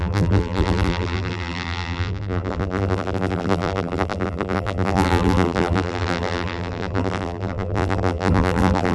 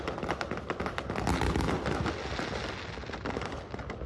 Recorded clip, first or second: second